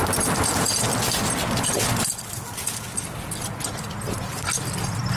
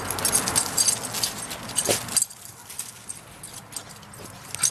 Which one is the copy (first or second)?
first